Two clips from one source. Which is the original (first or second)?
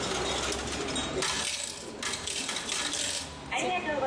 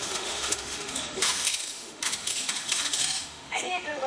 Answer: first